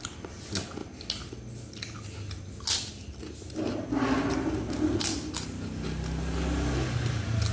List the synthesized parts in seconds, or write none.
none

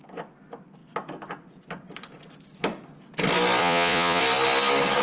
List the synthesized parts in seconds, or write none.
3.6-4.2 (vocoder, Vocos)

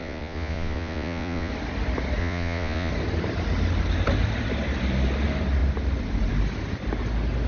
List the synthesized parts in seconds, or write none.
0.0-1.5 (vocoder, Vocos); 2.2-2.9